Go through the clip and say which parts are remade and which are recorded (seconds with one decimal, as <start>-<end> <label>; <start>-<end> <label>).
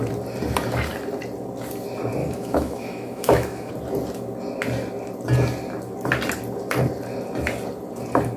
0.0-2.2 recorded; 2.2-3.7 remade; 3.7-8.4 recorded